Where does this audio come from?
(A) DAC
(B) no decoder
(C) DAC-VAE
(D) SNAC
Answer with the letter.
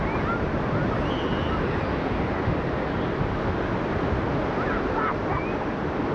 B